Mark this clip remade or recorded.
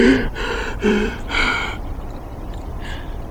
remade